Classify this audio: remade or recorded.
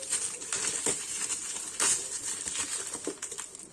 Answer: recorded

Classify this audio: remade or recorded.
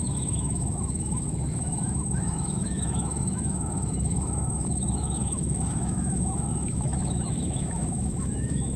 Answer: remade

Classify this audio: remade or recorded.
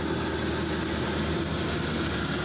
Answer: recorded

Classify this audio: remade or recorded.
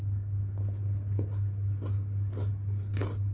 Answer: recorded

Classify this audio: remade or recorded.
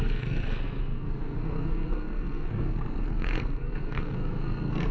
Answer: remade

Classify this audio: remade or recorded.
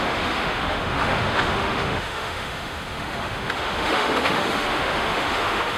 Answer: remade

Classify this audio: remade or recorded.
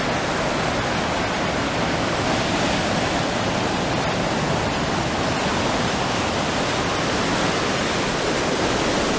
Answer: recorded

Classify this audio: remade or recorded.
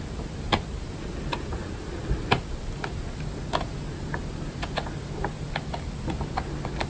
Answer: recorded